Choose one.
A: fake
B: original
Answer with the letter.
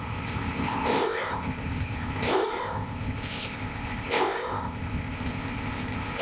A